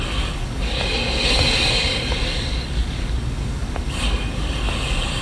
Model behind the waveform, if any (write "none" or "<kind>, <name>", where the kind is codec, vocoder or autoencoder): codec, DAC